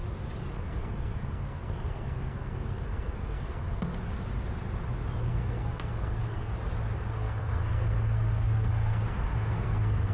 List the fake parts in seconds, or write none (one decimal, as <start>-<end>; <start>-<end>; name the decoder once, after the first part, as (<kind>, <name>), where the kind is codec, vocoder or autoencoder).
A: 0.5-3.9 (codec, SNAC); 5.2-6.5; 7.1-10.1